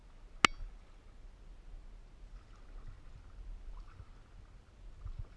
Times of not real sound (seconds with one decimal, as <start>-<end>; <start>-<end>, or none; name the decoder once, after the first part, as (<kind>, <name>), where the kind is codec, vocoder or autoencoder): none